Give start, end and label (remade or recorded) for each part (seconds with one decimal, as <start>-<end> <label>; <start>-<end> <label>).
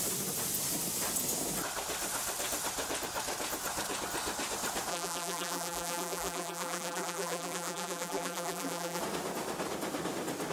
0.0-4.9 recorded; 4.9-9.0 remade; 9.0-10.5 recorded